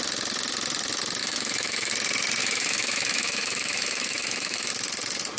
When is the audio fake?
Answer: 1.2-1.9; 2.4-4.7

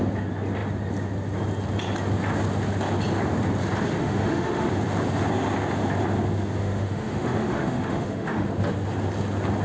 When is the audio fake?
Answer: 4.0-4.7; 6.6-8.5

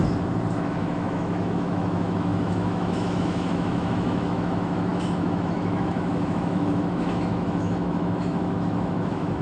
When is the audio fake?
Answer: 0.5-9.4

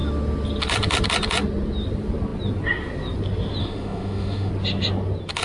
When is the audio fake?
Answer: 3.6-4.5